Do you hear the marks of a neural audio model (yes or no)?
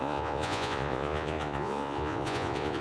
yes